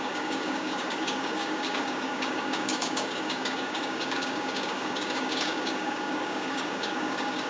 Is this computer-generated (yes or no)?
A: yes